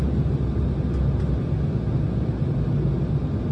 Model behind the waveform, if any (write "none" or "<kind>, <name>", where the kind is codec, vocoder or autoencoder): none